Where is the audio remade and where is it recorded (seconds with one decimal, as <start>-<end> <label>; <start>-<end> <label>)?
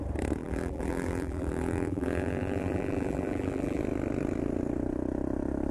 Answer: 0.0-0.4 recorded; 0.4-3.8 remade; 3.8-5.7 recorded